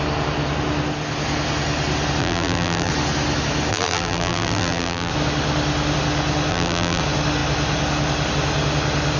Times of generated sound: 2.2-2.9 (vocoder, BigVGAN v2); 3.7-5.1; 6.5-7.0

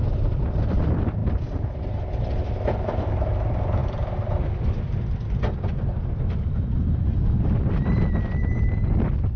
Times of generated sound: 0.0-9.4 (vocoder, BigVGAN v2)

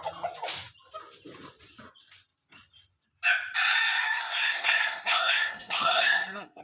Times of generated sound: 4.2-6.6 (codec, SNAC)

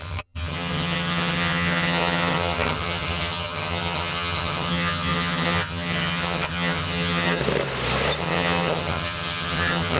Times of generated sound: 0.0-7.4 (vocoder, HiFi-GAN); 8.2-10.0

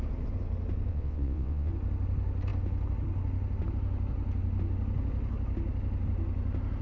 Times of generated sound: 0.9-1.7 (vocoder, WaveNeXt)

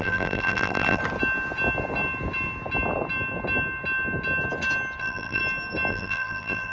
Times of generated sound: 0.0-1.0 (vocoder, BigVGAN v2); 5.0-5.4; 5.9-6.7

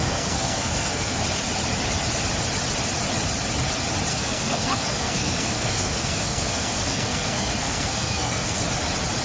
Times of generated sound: 0.0-1.2 (codec, SNAC); 4.1-8.6